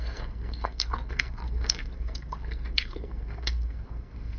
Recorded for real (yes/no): no